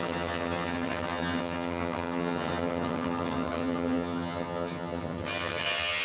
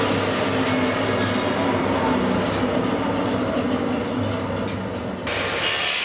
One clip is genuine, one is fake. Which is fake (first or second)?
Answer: first